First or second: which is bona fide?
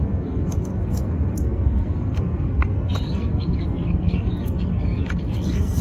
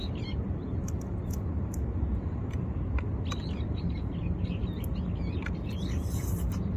second